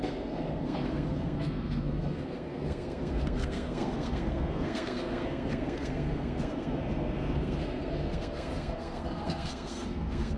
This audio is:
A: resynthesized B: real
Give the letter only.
A